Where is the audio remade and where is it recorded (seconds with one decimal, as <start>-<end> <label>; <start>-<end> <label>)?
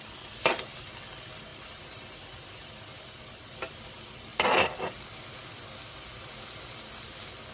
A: 0.0-7.5 recorded